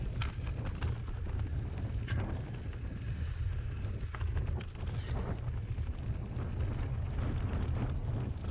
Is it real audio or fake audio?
real